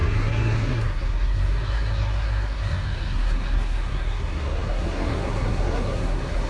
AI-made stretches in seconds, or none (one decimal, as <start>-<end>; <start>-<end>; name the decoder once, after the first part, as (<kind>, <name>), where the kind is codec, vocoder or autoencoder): 0.0-6.5 (codec, SNAC)